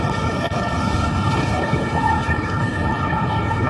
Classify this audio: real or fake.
fake